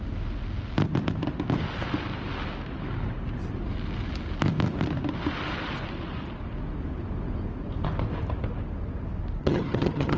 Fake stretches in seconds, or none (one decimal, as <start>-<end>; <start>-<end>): 9.4-10.2